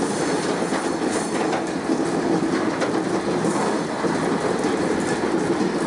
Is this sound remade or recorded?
recorded